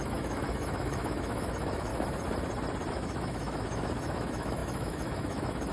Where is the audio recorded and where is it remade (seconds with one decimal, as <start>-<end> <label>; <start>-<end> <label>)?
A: 0.0-1.9 remade; 1.9-2.9 recorded; 2.9-5.7 remade